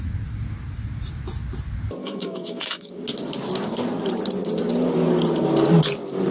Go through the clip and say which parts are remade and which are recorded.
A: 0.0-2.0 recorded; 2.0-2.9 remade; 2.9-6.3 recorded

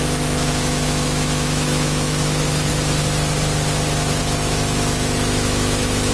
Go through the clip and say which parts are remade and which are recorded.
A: 0.0-2.7 remade; 2.7-4.2 recorded; 4.2-6.1 remade

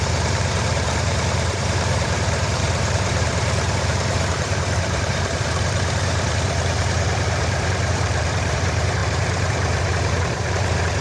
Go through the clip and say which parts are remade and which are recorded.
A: 0.0-11.0 remade

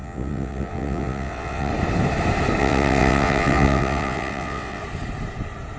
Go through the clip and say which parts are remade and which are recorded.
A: 0.0-1.7 remade; 1.7-2.6 recorded; 2.6-4.8 remade; 4.8-5.8 recorded